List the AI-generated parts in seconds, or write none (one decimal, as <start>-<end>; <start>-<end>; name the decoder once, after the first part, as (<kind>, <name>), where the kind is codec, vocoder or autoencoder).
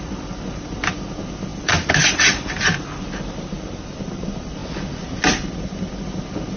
1.5-3.0 (vocoder, BigVGAN v2)